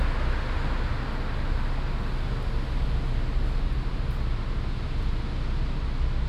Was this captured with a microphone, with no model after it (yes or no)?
yes